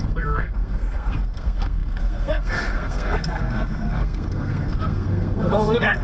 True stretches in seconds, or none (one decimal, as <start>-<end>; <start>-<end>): none